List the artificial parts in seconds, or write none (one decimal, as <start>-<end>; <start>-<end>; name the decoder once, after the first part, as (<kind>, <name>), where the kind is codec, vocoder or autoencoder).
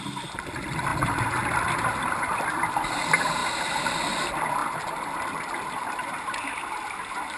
0.0-0.9 (vocoder, BigVGAN v2); 2.0-3.4; 4.1-4.6; 5.6-7.4